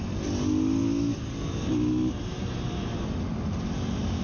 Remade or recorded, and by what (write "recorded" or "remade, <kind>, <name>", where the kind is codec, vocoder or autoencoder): recorded